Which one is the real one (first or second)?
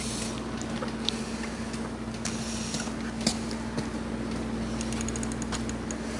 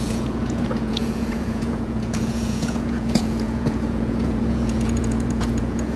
first